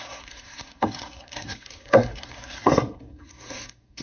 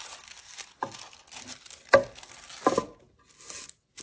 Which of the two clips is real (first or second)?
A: second